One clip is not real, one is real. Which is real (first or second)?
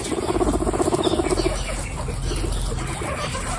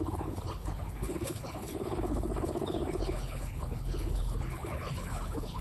first